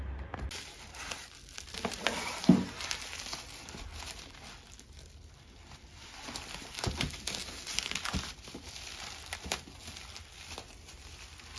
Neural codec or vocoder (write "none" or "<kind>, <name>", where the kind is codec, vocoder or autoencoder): none